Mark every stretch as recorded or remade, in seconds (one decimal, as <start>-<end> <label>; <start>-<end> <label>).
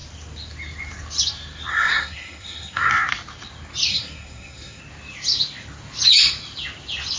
0.0-1.7 recorded; 1.7-2.9 remade; 2.9-3.9 recorded; 3.9-4.8 remade; 4.8-7.2 recorded